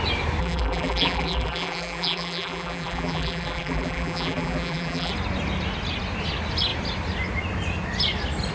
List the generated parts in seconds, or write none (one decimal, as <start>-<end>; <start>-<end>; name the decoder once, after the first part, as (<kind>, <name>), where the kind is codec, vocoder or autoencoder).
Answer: 0.4-5.1 (vocoder, BigVGAN v2)